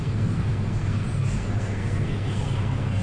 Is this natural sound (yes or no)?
no